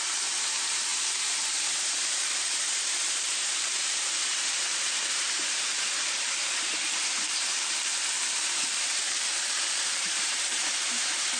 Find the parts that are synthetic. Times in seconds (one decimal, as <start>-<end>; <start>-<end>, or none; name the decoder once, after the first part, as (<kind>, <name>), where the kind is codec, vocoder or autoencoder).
0.0-11.4 (vocoder, BigVGAN v2)